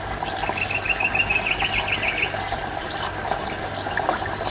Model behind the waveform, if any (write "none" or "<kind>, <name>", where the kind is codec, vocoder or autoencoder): none